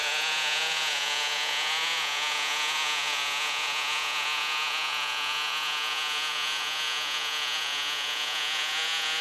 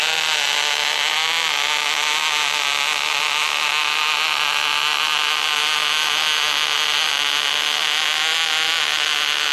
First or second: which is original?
second